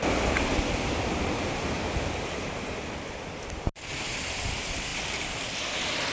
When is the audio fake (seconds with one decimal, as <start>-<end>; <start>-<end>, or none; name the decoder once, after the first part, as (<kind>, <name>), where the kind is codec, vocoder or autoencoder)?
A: none